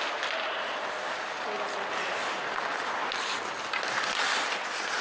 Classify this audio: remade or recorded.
recorded